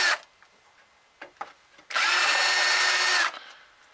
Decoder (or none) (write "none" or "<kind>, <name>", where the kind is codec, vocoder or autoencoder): none